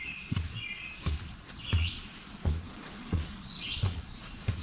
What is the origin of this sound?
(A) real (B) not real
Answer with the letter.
B